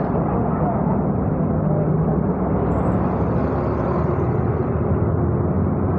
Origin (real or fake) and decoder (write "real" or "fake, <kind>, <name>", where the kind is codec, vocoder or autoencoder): real